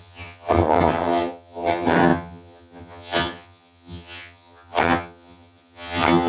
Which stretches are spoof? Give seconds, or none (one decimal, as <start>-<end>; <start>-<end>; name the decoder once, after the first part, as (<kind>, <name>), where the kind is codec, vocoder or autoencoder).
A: 0.0-6.3 (vocoder, HiFi-GAN)